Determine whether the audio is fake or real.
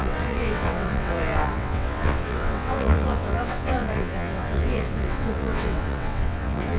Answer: fake